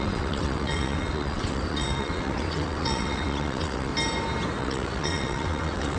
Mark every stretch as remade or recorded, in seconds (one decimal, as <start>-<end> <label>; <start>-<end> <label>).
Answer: 0.0-3.9 remade; 3.9-4.6 recorded; 4.6-6.0 remade